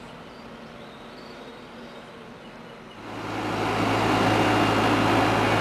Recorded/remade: recorded